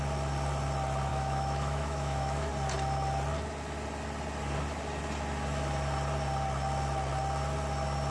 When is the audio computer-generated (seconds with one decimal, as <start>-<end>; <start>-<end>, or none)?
1.1-2.5